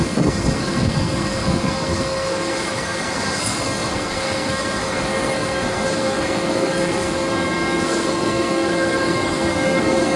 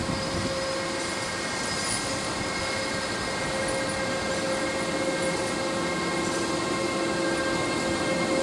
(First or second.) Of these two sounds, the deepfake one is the first